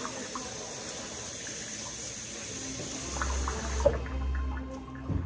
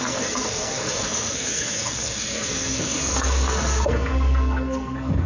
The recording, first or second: first